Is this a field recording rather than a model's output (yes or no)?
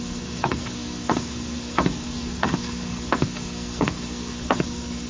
no